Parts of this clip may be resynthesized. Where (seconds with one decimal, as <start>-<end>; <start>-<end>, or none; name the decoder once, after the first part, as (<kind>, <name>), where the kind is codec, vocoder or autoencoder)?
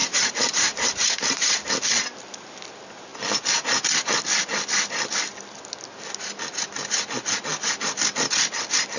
0.0-1.7 (vocoder, BigVGAN v2)